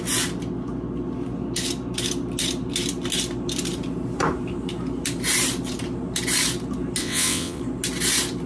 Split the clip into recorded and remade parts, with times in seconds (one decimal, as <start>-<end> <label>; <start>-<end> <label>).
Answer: 0.0-7.0 recorded; 7.0-7.6 remade; 7.6-8.5 recorded